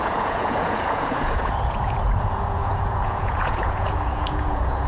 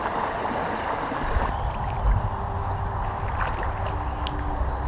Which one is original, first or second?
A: second